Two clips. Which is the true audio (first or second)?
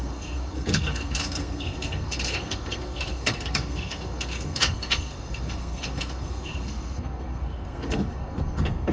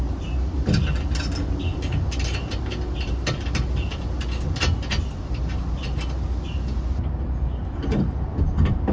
second